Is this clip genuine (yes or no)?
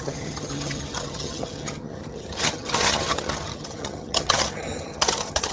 no